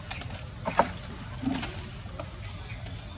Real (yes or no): yes